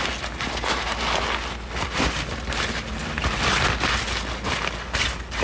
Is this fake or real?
real